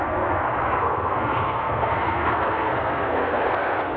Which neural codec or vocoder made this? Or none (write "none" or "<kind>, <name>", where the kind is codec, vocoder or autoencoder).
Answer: codec, SNAC